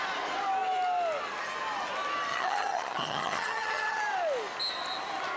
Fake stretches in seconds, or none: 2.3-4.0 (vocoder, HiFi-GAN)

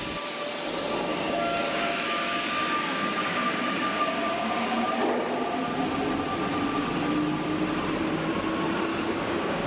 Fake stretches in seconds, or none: 1.1-4.8 (codec, DAC); 8.9-9.7

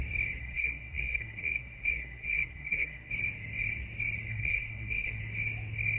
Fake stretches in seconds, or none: 0.4-3.1 (codec, SNAC); 4.3-5.2

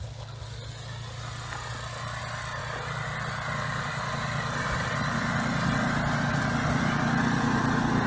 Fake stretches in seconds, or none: none